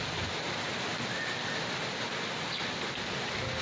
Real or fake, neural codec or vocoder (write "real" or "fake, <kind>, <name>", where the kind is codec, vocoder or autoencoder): real